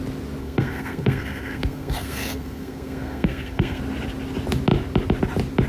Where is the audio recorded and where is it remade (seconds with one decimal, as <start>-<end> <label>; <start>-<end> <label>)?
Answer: 0.0-0.4 recorded; 0.4-3.8 remade; 3.8-5.7 recorded